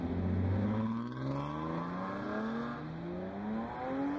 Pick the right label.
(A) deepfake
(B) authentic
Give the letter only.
B